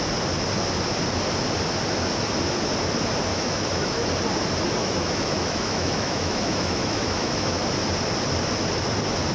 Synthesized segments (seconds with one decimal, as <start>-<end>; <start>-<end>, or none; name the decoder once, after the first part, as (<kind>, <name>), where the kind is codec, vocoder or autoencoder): 3.3-4.1 (autoencoder, DAC-VAE); 4.8-7.6